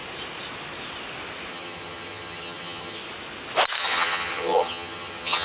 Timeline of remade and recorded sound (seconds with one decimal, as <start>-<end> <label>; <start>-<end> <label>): 0.0-1.5 recorded; 1.5-3.0 remade; 3.0-3.8 recorded; 3.8-5.4 remade